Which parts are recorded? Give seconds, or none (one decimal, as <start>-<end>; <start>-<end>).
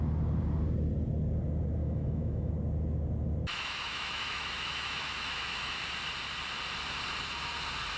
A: 0.0-1.8; 2.5-3.5; 5.8-8.0